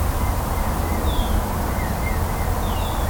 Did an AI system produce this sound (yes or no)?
no